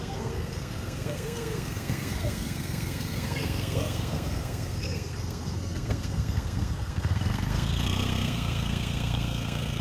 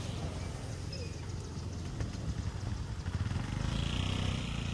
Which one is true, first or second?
second